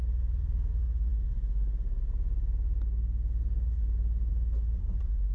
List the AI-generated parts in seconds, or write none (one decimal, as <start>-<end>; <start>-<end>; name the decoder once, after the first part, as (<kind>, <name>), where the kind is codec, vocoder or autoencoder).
none